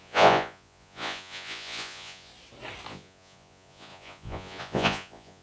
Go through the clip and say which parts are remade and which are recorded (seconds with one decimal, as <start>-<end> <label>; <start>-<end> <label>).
0.0-2.3 remade; 2.3-2.9 recorded; 2.9-5.4 remade